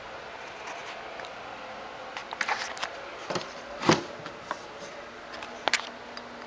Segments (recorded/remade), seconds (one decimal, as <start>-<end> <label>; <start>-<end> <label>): 0.0-6.5 recorded